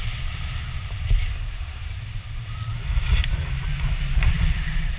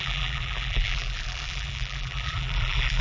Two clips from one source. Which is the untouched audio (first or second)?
first